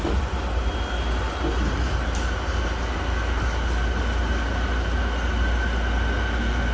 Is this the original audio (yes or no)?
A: yes